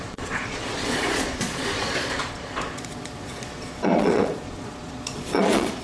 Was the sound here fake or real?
fake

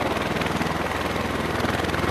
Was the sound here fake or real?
real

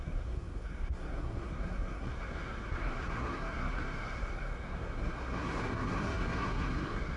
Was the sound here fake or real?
fake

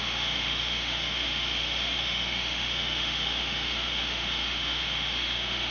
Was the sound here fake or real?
fake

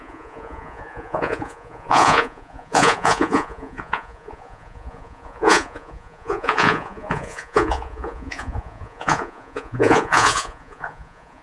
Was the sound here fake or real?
fake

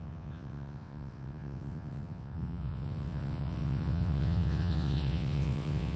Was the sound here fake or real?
fake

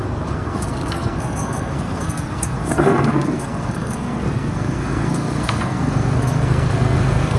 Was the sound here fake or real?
fake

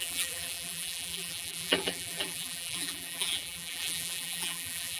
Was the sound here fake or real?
fake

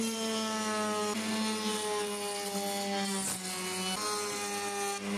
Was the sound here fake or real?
real